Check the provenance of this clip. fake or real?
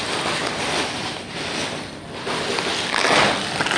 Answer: real